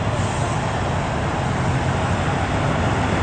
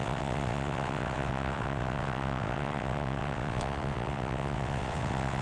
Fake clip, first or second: second